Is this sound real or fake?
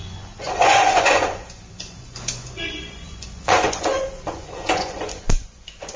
fake